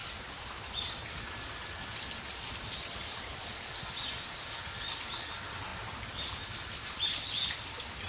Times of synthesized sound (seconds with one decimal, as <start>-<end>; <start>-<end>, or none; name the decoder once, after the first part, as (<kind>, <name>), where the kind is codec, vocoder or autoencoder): none